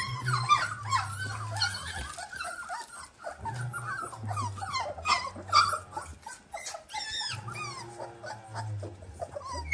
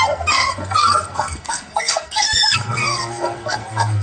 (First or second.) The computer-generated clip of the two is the second